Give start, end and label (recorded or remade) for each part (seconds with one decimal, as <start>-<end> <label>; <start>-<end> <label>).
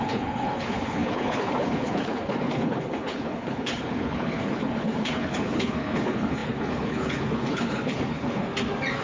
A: 0.0-8.4 remade; 8.4-9.0 recorded